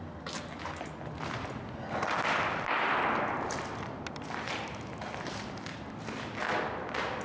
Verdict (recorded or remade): recorded